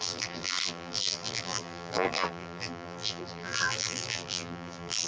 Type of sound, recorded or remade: remade